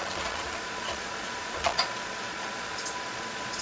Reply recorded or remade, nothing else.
remade